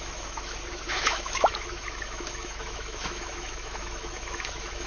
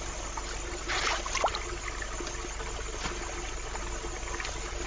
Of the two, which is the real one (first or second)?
second